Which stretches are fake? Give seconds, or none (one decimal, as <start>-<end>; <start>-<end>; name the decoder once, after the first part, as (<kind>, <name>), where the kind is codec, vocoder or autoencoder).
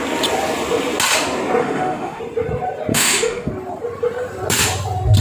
1.6-2.2 (autoencoder, DAC-VAE); 2.9-3.5